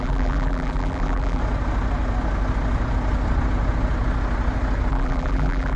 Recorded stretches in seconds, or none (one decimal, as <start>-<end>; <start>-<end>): 1.4-4.9